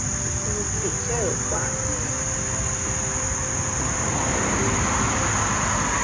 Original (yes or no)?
yes